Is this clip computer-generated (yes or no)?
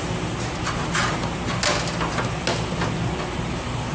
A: no